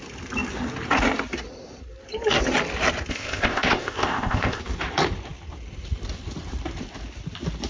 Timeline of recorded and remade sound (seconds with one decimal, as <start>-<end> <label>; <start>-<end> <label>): 0.0-3.1 recorded; 3.1-4.6 remade; 4.6-7.7 recorded